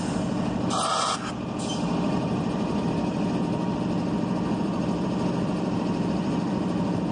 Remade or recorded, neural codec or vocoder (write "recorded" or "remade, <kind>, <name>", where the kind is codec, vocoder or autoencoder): remade, vocoder, BigVGAN v2